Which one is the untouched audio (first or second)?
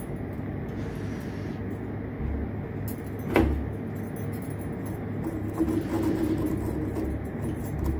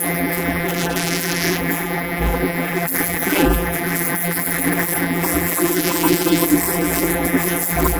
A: first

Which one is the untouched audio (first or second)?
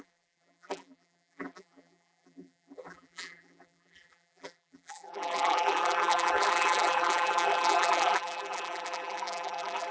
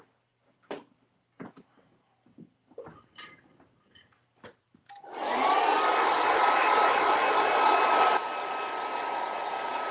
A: second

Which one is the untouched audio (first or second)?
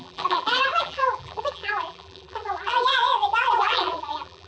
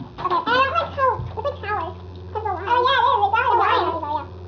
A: second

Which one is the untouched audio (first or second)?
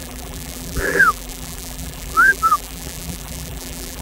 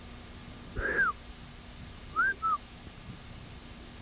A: second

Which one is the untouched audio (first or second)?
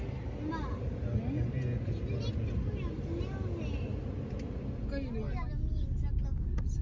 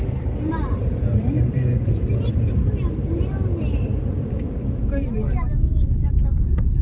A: first